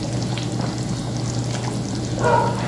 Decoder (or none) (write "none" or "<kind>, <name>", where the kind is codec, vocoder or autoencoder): none